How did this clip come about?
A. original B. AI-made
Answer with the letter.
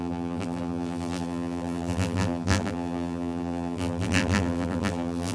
B